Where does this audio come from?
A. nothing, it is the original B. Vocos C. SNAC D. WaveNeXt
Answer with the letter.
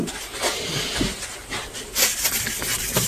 A